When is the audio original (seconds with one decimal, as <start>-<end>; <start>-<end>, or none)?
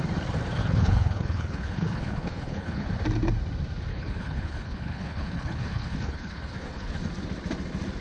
0.0-0.6; 2.9-3.9; 7.0-8.0